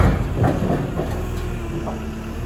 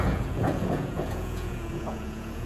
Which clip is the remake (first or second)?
second